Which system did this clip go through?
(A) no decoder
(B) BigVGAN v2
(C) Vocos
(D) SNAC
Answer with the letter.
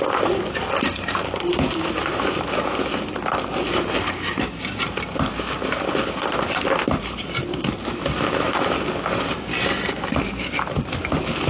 A